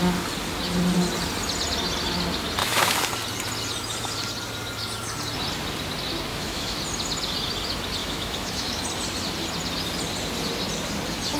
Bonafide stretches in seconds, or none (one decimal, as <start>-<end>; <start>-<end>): 0.0-2.6; 3.1-6.3; 6.8-8.0; 8.8-11.4